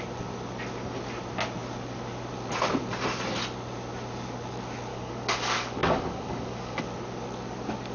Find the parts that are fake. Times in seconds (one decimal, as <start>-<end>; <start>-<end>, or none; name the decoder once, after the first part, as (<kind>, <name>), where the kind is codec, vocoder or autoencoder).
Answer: 4.9-6.8 (codec, DAC)